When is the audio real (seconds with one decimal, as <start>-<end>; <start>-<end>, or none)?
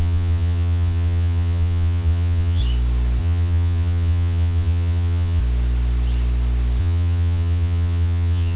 2.6-3.2; 5.4-6.8